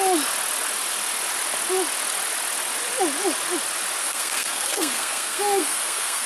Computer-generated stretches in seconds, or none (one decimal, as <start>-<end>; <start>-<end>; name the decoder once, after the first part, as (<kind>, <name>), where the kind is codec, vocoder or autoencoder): 4.0-6.3 (codec, SNAC)

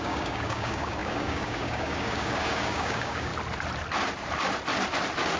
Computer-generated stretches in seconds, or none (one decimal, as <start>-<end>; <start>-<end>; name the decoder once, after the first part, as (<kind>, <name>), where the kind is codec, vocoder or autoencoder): 0.0-3.3 (codec, DAC)

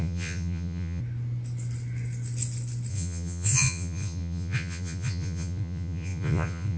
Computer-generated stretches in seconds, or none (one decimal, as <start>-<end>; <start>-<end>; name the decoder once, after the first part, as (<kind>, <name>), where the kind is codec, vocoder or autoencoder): 0.0-1.0 (vocoder, Vocos); 2.9-6.8

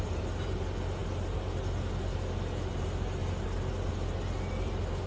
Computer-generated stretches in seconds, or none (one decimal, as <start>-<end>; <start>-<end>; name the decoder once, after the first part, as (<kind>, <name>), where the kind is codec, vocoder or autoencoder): none